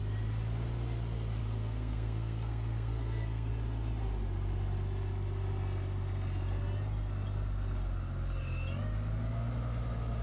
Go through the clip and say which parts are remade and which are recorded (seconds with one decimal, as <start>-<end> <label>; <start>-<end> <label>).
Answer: 0.0-1.4 recorded; 1.4-3.5 remade; 3.5-10.2 recorded

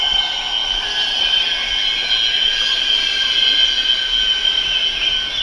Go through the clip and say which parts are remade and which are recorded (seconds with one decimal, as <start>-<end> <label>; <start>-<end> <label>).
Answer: 0.0-5.4 recorded